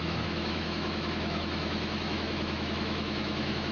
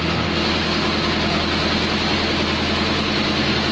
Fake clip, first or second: first